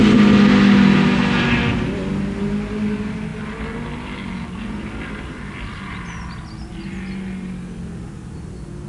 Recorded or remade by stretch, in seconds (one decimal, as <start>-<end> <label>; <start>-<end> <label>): 0.0-8.9 recorded